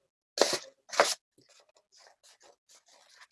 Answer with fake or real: real